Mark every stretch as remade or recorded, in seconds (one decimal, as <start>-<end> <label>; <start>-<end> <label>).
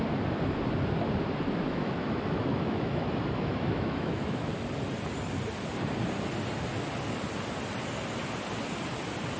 0.0-1.7 recorded; 1.7-4.5 remade; 4.5-9.4 recorded